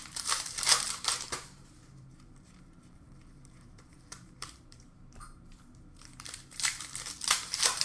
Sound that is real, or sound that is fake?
fake